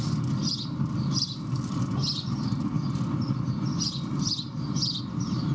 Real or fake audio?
real